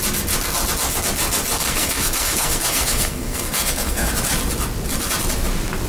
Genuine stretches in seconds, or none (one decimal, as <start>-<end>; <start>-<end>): 0.0-1.6; 4.1-5.9